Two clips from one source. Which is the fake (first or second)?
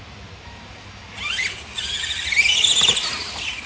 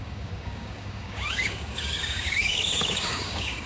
second